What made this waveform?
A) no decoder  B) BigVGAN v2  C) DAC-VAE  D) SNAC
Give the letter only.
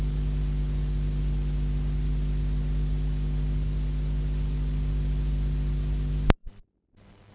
A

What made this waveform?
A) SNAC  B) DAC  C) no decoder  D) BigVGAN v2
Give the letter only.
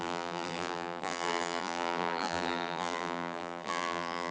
D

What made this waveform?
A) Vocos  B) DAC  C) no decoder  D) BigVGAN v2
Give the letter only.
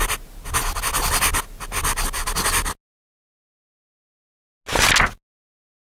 C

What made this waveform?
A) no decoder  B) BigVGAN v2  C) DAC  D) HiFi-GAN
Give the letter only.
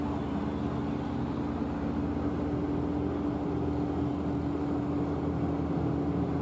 A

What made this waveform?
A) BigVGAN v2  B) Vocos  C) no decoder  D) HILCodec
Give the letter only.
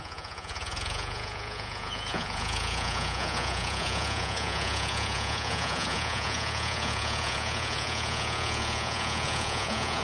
B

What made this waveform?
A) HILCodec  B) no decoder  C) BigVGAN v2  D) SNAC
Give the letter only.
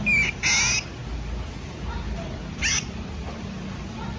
B